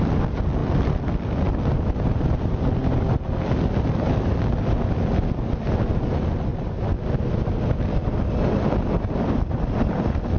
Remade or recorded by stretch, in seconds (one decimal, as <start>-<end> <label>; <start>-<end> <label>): 0.0-10.4 recorded